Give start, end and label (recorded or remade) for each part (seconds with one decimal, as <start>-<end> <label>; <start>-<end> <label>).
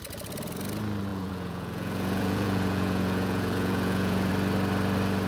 0.0-1.1 recorded; 1.1-4.3 remade; 4.3-5.3 recorded